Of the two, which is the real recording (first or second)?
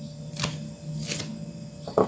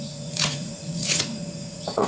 first